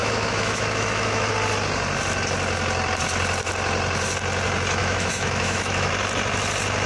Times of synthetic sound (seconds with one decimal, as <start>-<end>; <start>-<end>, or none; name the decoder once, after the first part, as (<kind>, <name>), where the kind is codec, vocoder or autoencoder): 0.0-1.3 (autoencoder, DAC-VAE); 4.8-5.9